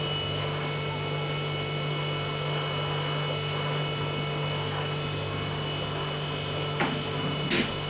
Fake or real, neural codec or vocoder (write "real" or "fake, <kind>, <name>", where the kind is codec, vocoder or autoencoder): real